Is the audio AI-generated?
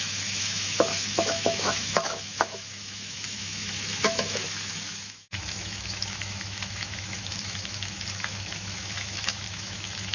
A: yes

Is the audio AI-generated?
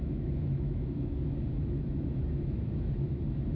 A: yes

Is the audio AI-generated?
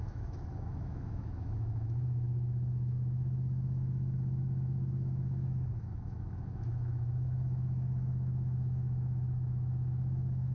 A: yes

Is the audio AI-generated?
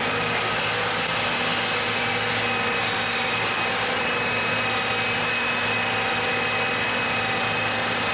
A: no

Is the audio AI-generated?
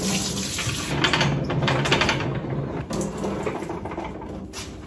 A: no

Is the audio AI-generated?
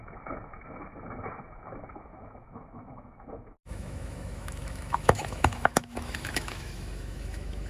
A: yes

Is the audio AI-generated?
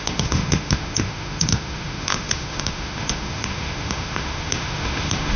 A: yes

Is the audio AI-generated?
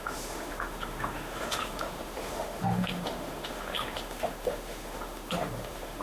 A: yes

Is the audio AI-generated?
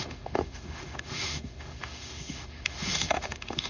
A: yes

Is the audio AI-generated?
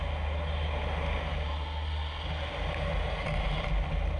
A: no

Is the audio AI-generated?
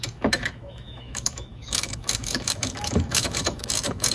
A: yes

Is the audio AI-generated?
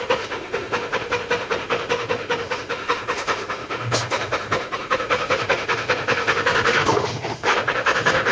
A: yes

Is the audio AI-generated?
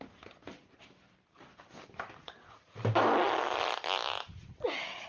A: no